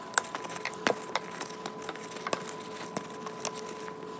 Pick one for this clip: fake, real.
real